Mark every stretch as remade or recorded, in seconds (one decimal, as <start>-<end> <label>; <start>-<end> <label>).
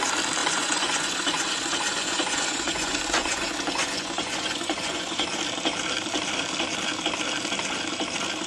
0.0-0.4 recorded; 0.4-5.4 remade; 5.4-8.5 recorded